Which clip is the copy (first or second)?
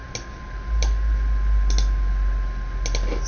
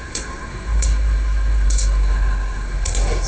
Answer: second